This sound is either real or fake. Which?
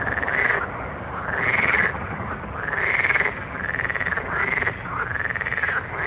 real